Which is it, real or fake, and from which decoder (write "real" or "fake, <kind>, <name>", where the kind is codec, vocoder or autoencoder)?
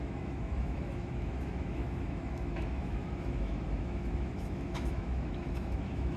fake, autoencoder, DAC-VAE